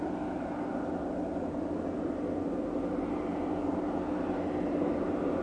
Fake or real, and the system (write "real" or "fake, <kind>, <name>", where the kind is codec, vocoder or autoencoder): real